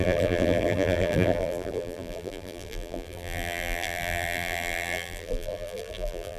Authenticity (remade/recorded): remade